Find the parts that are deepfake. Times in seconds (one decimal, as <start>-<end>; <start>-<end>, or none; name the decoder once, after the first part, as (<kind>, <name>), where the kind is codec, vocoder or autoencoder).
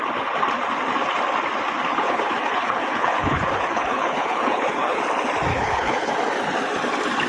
1.9-5.0 (codec, HILCodec); 5.5-6.1